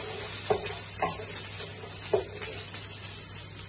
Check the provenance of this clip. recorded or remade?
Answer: recorded